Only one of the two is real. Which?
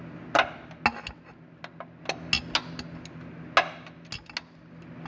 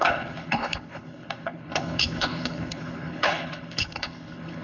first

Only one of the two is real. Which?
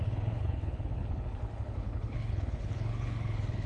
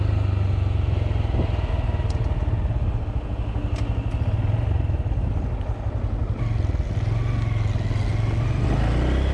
second